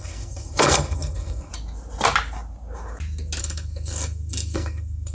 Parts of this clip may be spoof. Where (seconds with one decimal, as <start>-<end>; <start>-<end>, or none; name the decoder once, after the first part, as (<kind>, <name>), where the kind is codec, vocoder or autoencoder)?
0.0-1.5 (codec, SNAC); 3.4-5.1